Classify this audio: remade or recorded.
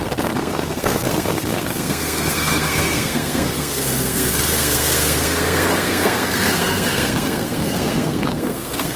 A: remade